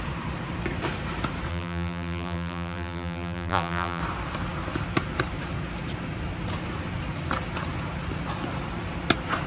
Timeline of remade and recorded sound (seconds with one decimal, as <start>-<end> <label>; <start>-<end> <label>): 0.0-1.5 recorded; 1.5-4.0 remade; 4.0-9.5 recorded